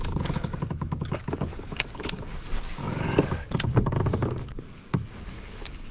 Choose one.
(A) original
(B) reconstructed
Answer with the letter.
B